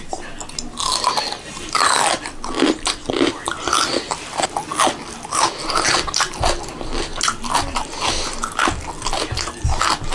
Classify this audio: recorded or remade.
recorded